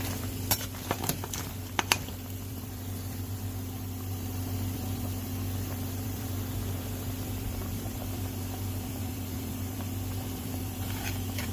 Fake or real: fake